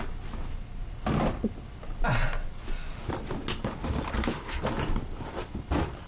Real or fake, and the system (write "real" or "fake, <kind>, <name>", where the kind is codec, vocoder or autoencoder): real